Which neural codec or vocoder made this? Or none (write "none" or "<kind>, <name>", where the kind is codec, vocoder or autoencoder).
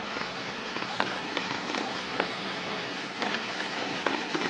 codec, SNAC